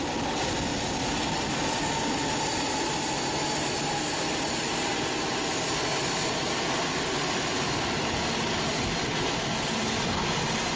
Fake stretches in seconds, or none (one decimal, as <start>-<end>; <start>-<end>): none